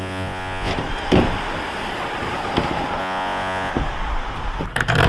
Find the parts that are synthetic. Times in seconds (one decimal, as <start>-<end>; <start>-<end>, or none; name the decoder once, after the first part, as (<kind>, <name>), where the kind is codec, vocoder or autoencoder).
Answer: 0.0-0.7 (vocoder, Vocos); 3.0-3.7